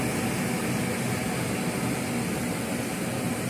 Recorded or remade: recorded